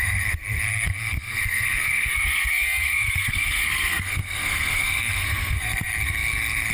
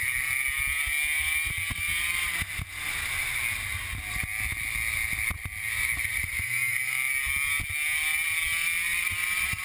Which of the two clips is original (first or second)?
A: second